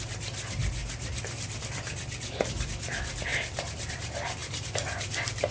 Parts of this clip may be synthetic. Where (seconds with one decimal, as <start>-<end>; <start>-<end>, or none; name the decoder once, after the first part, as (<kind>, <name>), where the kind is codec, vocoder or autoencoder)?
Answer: none

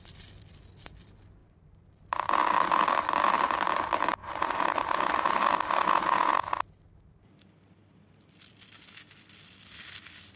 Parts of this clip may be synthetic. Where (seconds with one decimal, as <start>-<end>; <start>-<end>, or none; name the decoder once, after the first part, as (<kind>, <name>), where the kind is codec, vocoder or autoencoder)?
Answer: 1.4-2.2 (vocoder, BigVGAN v2); 4.2-5.1

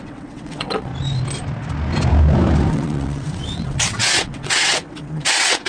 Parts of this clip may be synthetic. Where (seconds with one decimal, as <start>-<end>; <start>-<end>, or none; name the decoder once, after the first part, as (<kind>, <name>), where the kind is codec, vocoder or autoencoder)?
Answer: 0.0-0.9 (vocoder, WaveNeXt); 2.7-5.7

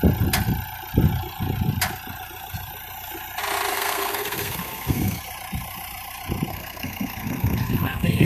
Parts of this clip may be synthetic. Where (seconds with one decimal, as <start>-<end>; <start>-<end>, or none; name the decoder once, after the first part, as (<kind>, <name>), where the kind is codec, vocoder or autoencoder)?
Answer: 3.7-5.2 (codec, SNAC); 6.5-8.3

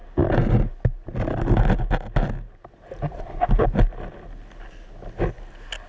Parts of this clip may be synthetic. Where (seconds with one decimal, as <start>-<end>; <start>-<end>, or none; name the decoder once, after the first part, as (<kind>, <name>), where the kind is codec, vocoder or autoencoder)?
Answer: none